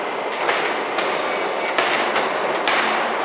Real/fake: real